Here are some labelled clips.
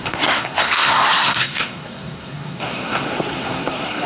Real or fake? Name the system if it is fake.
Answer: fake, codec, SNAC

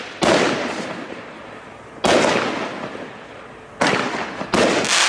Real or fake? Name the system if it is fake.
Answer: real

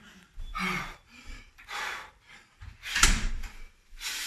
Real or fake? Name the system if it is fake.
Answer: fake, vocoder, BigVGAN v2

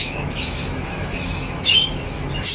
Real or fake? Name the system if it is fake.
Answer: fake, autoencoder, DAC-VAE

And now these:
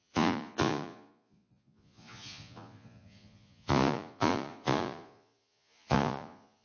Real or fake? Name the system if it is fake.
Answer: fake, vocoder, Vocos